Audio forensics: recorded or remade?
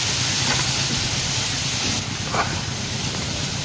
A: recorded